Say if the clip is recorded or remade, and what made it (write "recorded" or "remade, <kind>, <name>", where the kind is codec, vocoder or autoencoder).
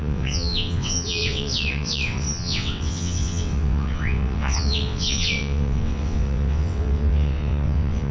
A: remade, vocoder, WaveNeXt